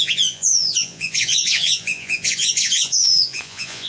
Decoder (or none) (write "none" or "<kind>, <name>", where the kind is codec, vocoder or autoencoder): vocoder, Vocos